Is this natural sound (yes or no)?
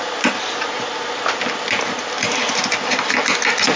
yes